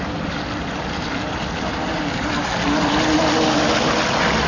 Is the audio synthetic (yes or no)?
no